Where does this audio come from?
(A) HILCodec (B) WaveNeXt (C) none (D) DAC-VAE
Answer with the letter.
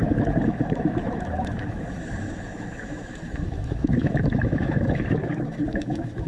D